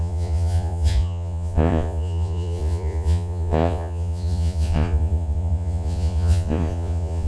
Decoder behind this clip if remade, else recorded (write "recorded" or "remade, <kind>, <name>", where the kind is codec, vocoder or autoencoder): remade, vocoder, Vocos